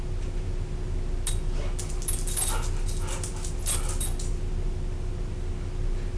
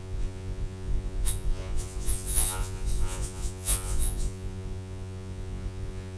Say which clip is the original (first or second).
first